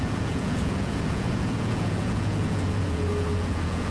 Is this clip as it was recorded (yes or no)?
no